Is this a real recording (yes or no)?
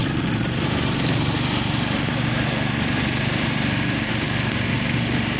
no